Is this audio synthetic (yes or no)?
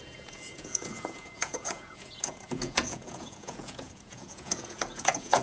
yes